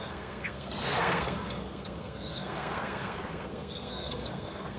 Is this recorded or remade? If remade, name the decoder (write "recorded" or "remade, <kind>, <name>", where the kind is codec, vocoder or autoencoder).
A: remade, codec, SNAC